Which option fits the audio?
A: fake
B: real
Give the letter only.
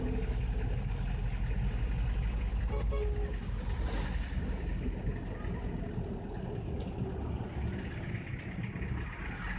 B